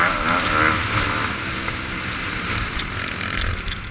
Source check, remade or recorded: recorded